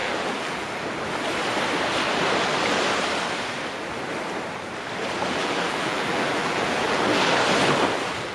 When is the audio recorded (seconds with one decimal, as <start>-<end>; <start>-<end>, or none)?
0.7-5.4; 7.0-8.3